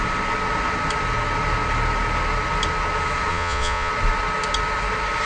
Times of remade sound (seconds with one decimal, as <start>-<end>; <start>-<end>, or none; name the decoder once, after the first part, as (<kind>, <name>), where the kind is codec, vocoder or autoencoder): 3.3-3.9 (vocoder, Vocos)